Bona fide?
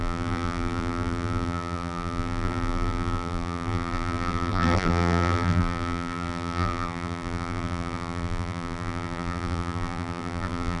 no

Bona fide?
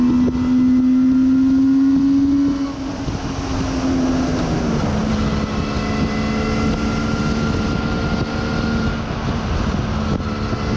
yes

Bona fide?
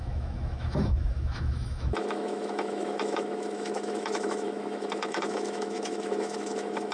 no